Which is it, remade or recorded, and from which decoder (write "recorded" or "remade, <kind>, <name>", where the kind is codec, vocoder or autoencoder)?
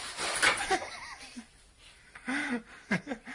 recorded